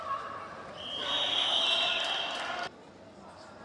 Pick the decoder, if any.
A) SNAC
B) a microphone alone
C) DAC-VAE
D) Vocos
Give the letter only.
B